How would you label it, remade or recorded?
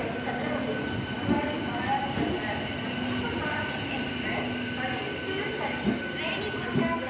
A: recorded